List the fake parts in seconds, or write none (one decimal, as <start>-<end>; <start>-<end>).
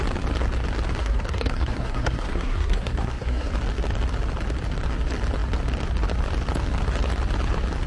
1.0-3.5